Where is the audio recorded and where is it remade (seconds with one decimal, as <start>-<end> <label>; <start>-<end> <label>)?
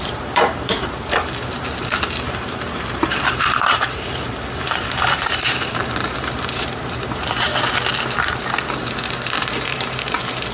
0.0-7.5 remade; 7.5-8.4 recorded; 8.4-10.5 remade